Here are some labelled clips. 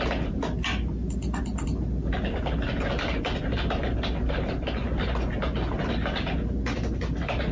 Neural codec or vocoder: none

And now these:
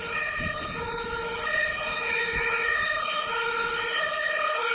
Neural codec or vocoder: codec, HILCodec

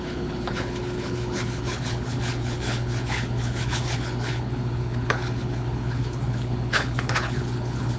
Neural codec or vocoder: codec, HILCodec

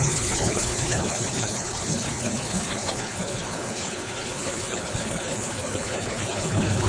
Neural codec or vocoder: codec, HILCodec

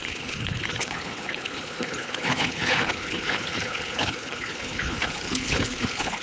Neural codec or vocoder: codec, HILCodec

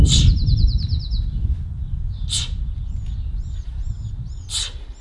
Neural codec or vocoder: none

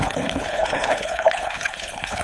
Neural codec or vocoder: codec, HILCodec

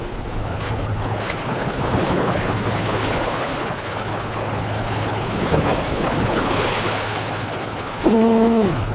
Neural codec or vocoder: codec, HILCodec